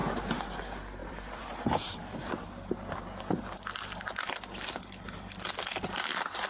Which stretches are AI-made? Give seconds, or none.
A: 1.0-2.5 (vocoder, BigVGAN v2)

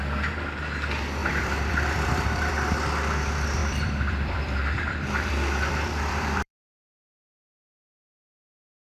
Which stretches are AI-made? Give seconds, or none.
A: 1.2-2.5 (vocoder, BigVGAN v2); 3.6-7.5

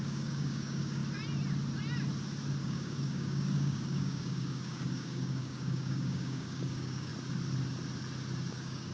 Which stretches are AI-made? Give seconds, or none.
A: 0.0-1.0 (codec, DAC); 2.6-7.1; 8.5-8.9

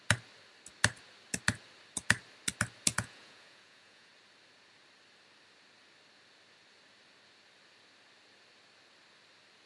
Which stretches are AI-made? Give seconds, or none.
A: 2.9-4.1 (vocoder, Vocos)

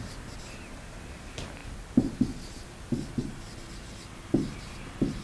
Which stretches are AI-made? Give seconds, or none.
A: none

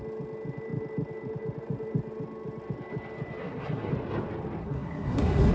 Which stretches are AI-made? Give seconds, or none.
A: 3.4-3.9 (codec, SNAC); 4.6-5.5

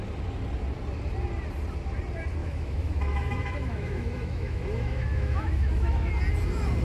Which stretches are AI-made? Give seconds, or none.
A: 2.4-6.1 (autoencoder, DAC-VAE)

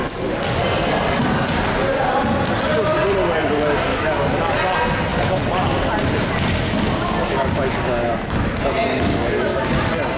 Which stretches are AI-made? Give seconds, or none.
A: 3.9-4.4 (codec, DAC); 8.8-9.4